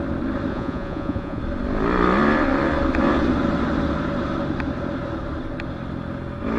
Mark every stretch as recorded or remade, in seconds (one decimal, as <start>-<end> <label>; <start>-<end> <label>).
0.0-0.5 recorded; 0.5-1.4 remade; 1.4-6.6 recorded